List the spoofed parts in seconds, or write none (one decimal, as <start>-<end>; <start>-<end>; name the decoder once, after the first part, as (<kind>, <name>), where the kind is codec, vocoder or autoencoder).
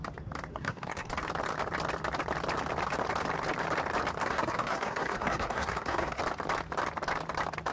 0.5-1.1 (codec, SNAC); 4.2-6.2